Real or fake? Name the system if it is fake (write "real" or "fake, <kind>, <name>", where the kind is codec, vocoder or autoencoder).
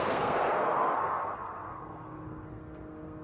fake, codec, SNAC